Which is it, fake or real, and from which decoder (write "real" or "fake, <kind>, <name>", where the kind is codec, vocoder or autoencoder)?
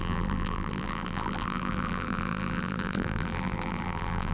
fake, vocoder, BigVGAN v2